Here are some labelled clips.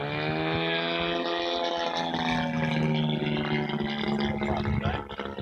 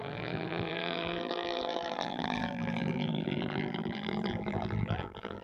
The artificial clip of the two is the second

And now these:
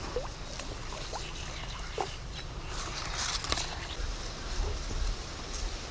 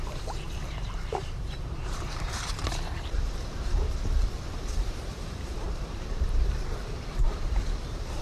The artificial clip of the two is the second